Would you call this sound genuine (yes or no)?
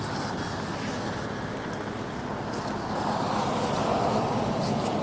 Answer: yes